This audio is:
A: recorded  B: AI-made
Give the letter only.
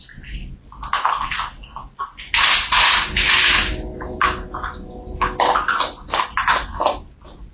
A